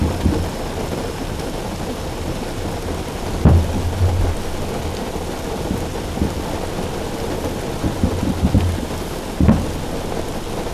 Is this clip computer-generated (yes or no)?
no